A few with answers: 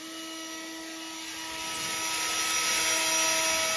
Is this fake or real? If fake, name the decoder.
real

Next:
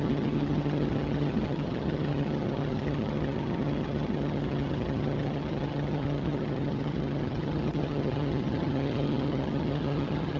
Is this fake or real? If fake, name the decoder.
fake, vocoder, HiFi-GAN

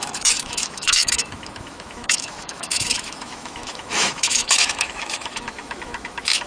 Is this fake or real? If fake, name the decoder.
fake, autoencoder, DAC-VAE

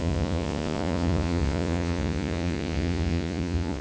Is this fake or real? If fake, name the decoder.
fake, vocoder, Vocos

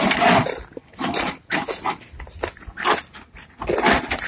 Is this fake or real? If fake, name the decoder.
real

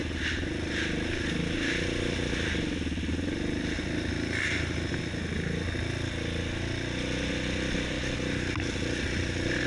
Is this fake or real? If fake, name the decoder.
real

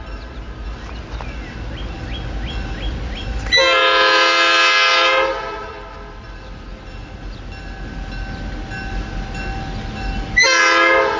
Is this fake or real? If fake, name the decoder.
real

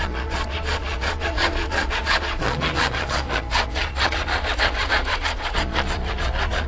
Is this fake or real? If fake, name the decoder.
fake, vocoder, Vocos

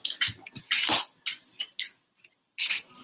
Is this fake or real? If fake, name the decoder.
real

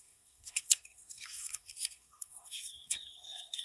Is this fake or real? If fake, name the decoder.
fake, codec, SNAC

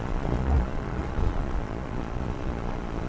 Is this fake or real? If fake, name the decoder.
fake, vocoder, Vocos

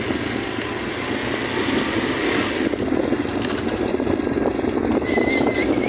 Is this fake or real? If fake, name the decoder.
real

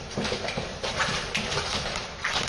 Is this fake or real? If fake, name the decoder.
fake, vocoder, BigVGAN v2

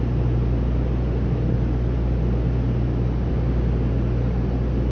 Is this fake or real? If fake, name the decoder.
real